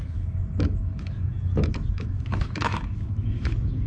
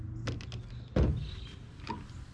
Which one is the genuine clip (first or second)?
second